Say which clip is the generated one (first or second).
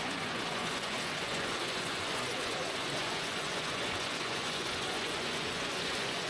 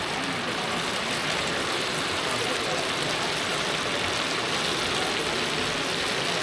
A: first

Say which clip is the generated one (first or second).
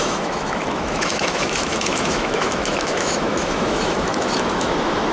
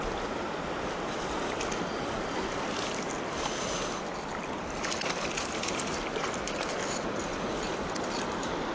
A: first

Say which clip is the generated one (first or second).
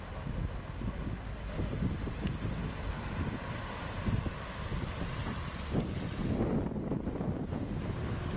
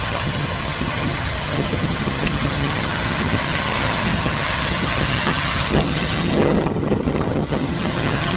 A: second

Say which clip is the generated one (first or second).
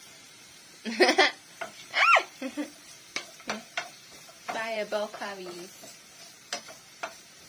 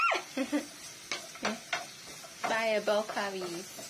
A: first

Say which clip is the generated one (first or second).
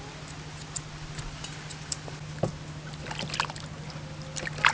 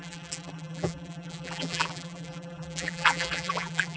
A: second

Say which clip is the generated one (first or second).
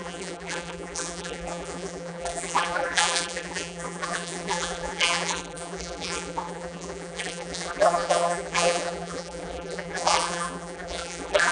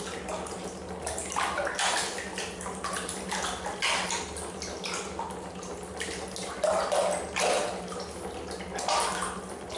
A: first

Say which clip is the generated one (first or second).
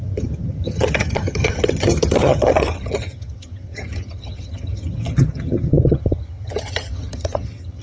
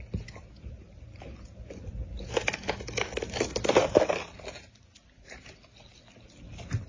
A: first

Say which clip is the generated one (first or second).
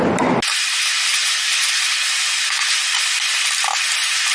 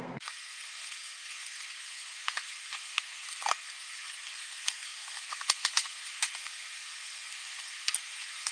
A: second